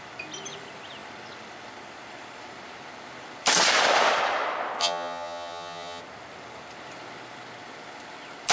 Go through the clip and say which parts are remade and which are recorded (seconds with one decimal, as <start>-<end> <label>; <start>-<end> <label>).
0.0-4.8 recorded; 4.8-6.0 remade; 6.0-8.5 recorded